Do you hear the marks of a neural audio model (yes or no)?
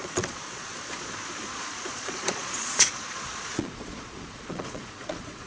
yes